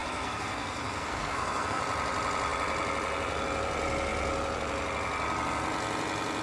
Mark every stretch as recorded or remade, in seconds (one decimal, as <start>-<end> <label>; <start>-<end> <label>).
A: 0.0-1.8 remade; 1.8-6.4 recorded